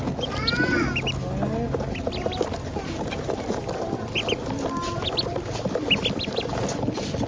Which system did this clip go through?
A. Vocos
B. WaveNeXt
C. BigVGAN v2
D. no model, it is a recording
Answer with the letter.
D